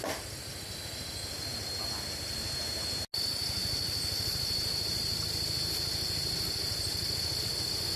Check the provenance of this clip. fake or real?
real